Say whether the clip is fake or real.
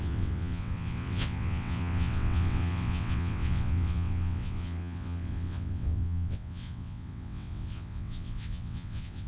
fake